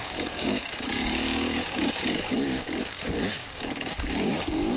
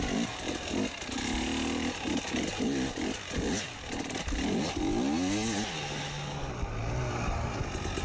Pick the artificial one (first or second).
first